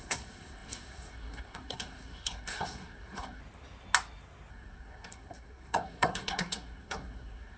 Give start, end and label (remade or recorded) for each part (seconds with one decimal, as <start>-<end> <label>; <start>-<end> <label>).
0.0-3.4 remade; 3.4-4.5 recorded; 4.5-7.6 remade